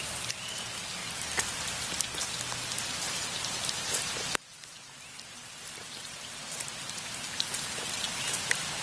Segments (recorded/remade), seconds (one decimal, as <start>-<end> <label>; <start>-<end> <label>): 0.0-1.0 remade; 1.0-3.2 recorded; 3.2-4.7 remade; 4.7-5.2 recorded; 5.2-8.8 remade